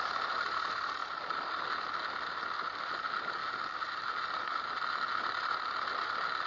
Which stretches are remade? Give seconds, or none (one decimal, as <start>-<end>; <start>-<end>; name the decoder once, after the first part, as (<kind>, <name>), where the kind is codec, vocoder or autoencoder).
0.0-1.0 (vocoder, BigVGAN v2); 2.4-3.4; 5.3-6.5